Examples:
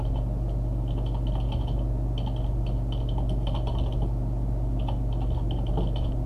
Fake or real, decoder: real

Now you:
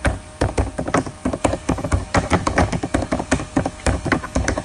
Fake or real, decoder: fake, codec, DAC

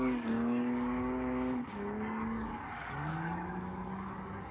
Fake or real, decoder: fake, codec, DAC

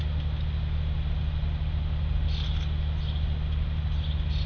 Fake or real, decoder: real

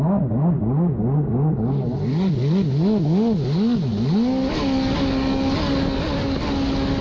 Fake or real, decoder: real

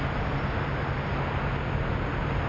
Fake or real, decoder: real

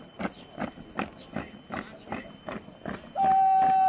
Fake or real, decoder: real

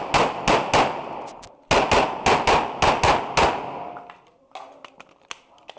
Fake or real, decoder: real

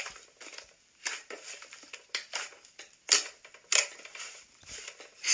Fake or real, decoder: real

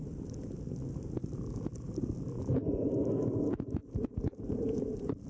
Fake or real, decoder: real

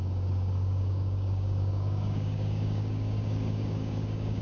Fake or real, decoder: fake, codec, DAC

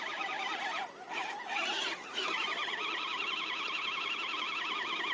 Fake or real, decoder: real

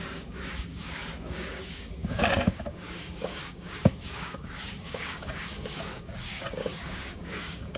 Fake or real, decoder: fake, codec, DAC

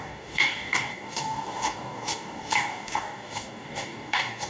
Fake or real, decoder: fake, codec, DAC